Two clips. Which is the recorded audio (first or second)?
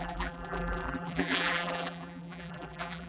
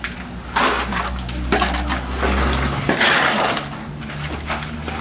second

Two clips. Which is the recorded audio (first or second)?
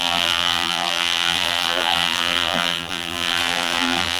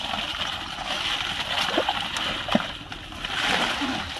second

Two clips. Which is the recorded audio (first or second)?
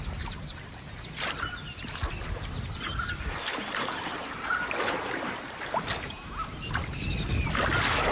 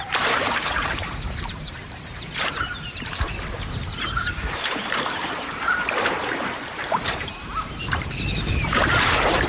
first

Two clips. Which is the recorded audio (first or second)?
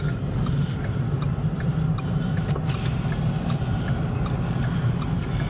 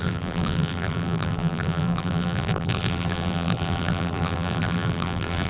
first